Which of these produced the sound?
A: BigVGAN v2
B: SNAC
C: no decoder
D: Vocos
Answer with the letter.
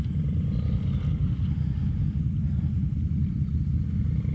C